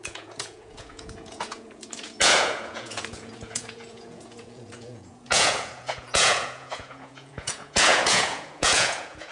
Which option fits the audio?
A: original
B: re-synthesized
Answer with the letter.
B